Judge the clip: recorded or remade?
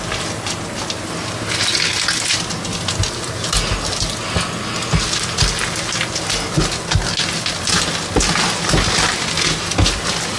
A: recorded